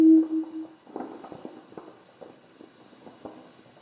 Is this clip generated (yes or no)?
no